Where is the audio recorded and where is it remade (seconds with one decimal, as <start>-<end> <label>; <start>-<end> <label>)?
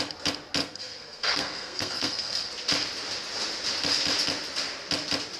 0.0-0.6 recorded; 0.6-2.5 remade; 2.5-5.4 recorded